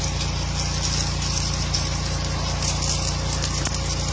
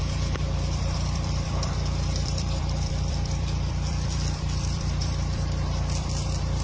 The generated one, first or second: second